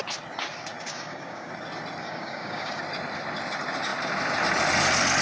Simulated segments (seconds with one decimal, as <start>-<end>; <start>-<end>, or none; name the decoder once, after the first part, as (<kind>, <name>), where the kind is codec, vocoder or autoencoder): 0.9-1.5 (codec, DAC); 2.0-2.8